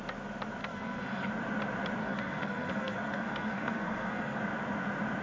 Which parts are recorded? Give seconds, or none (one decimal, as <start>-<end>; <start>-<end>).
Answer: 0.0-0.6; 1.3-2.0; 4.4-5.2

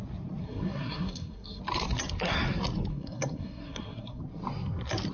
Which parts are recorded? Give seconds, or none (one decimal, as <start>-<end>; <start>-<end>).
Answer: 0.0-0.4; 1.6-2.9; 4.2-5.1

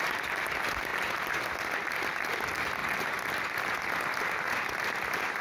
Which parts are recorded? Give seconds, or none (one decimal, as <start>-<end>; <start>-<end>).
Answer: 0.0-5.4

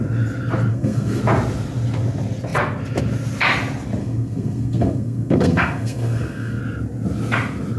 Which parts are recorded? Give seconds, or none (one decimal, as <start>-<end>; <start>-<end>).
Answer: 0.0-0.7; 1.2-4.0; 6.6-7.8

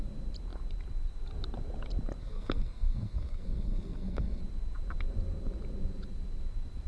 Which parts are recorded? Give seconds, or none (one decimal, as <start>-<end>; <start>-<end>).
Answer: 0.0-2.2; 4.4-6.9

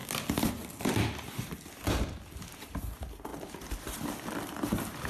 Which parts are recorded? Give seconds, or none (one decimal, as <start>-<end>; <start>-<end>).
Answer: 0.0-5.1